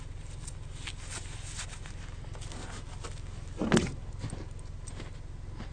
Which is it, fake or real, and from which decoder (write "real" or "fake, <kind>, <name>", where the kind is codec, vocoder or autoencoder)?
real